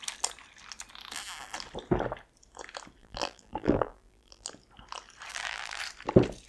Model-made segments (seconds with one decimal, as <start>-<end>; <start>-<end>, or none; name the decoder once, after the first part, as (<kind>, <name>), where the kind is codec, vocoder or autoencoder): 3.0-4.5 (vocoder, BigVGAN v2); 5.3-5.8